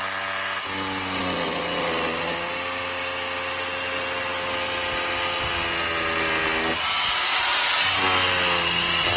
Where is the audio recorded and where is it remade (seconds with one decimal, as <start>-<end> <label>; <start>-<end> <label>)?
0.0-9.2 recorded